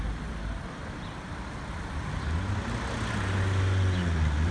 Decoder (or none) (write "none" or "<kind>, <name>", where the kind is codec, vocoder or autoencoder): none